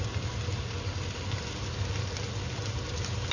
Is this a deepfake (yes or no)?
no